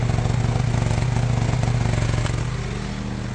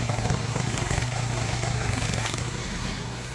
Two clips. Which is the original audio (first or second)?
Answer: first